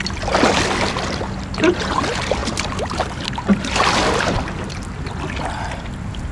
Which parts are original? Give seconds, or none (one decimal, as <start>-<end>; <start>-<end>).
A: 0.0-6.3